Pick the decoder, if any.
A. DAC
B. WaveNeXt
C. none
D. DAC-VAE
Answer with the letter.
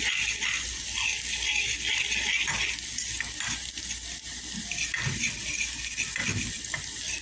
C